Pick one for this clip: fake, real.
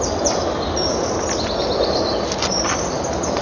real